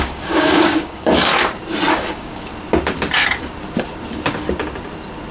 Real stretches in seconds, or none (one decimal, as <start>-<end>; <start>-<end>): 1.3-1.9; 2.5-5.3